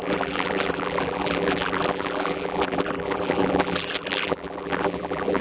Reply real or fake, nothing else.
fake